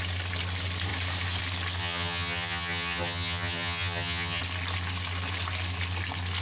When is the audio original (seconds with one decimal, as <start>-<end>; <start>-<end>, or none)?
0.0-1.8; 4.4-6.4